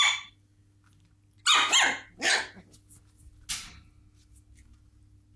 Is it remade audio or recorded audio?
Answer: recorded